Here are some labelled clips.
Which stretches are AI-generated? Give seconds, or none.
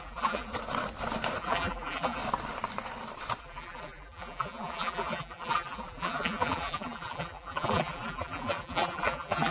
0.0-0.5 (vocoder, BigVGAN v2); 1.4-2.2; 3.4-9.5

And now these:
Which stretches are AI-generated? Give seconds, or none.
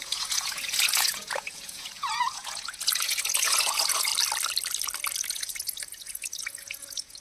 0.0-4.1 (vocoder, Vocos); 5.3-7.2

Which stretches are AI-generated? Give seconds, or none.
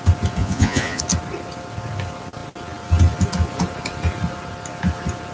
0.4-1.0 (vocoder, Vocos)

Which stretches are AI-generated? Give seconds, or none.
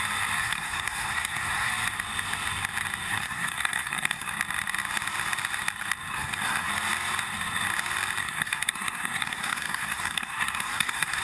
0.4-1.7 (codec, SNAC); 3.1-4.3; 6.1-6.7; 8.2-11.2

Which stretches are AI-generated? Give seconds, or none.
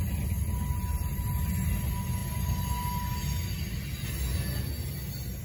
none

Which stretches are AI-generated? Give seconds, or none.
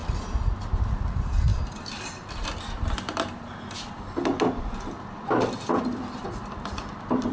none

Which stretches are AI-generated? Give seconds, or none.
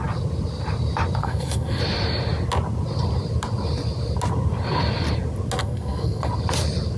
1.2-1.8 (codec, SNAC); 5.6-6.3